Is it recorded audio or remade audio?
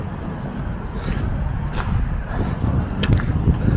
recorded